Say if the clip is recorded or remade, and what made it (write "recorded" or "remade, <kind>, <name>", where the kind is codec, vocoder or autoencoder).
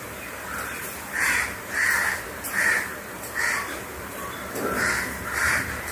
remade, vocoder, BigVGAN v2